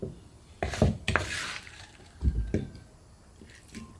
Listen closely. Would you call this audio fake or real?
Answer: real